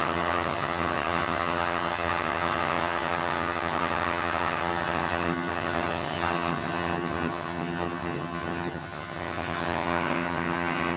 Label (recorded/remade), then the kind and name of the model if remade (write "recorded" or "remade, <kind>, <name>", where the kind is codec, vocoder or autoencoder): remade, vocoder, HiFi-GAN